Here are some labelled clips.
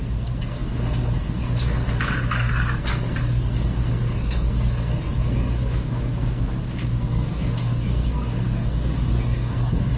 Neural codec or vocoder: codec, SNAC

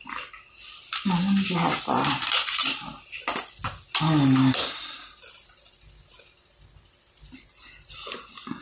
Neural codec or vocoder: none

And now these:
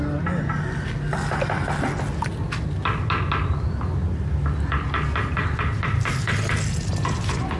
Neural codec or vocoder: none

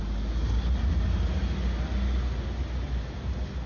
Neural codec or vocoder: none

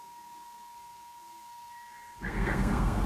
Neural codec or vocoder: codec, SNAC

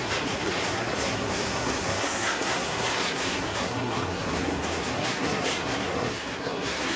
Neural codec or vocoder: codec, SNAC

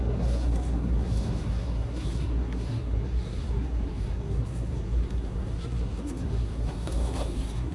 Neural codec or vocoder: codec, SNAC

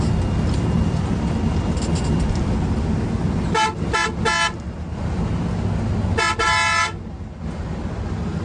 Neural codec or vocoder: none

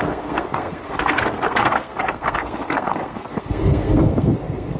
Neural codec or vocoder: codec, SNAC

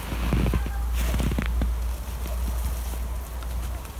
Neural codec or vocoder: none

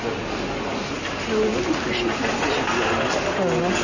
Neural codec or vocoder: none